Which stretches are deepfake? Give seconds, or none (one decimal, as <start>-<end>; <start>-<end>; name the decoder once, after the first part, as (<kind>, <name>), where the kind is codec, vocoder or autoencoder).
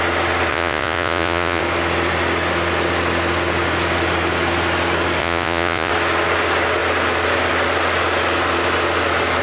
0.5-1.6 (vocoder, Vocos); 5.2-5.9